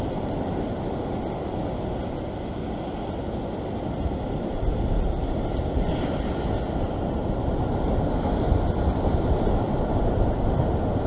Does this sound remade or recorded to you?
recorded